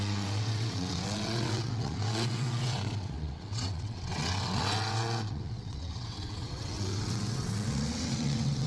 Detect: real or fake fake